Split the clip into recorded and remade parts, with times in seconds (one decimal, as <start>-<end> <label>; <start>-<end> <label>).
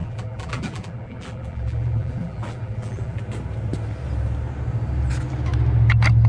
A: 0.0-3.2 remade; 3.2-6.3 recorded